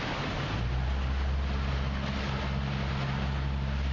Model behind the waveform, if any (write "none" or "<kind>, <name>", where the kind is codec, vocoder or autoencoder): none